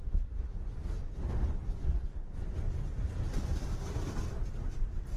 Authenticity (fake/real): real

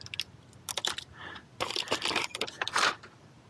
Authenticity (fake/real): real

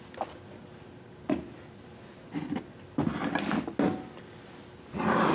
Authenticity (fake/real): real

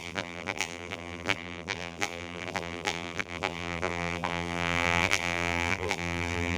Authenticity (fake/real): fake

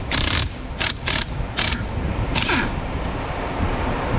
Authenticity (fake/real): fake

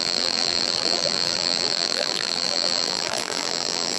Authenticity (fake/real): fake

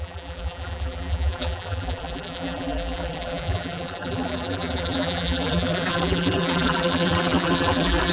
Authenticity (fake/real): fake